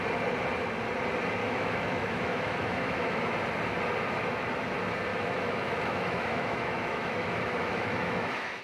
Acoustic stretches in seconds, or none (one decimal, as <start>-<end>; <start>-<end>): 0.0-1.4; 3.2-5.1